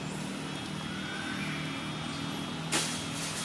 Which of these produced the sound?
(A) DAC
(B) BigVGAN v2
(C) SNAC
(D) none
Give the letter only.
D